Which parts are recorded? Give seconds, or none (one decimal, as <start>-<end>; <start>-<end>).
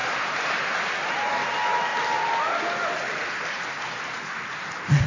0.0-5.1